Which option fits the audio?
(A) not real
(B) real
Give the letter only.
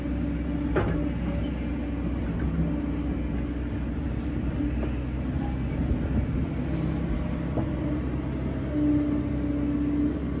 B